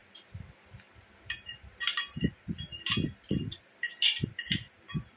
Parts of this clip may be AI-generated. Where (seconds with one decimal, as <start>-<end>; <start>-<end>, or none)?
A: none